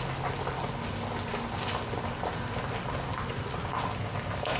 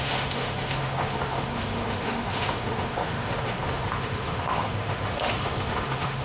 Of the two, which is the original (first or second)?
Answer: first